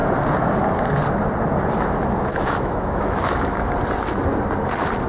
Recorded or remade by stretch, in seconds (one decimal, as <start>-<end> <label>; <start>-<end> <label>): 0.0-2.3 recorded; 2.3-3.7 remade; 3.7-5.1 recorded